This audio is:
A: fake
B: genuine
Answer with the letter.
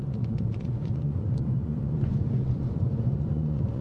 A